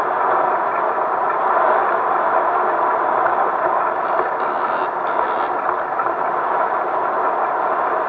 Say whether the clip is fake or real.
real